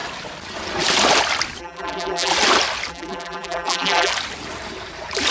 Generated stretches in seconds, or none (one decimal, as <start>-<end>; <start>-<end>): 1.6-2.3; 2.9-4.1